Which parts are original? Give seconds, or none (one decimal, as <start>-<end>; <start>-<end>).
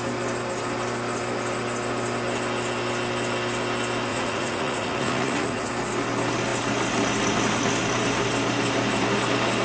0.0-4.1; 5.7-9.6